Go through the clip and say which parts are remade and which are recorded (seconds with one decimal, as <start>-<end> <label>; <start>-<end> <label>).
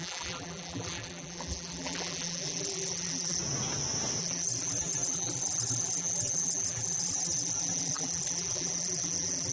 0.0-3.4 remade; 3.4-4.2 recorded; 4.2-9.5 remade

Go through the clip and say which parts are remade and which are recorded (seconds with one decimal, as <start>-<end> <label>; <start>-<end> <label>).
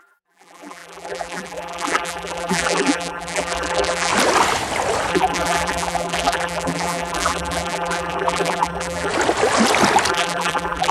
0.0-4.1 remade; 4.1-5.1 recorded; 5.1-9.1 remade; 9.1-10.1 recorded; 10.1-10.9 remade